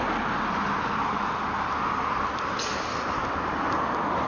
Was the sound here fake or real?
real